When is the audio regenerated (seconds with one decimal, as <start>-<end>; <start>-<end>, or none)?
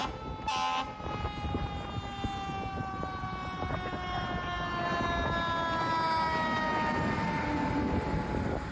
none